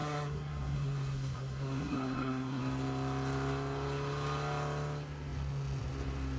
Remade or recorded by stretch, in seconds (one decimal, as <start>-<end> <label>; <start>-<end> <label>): 0.0-2.6 remade; 2.6-6.4 recorded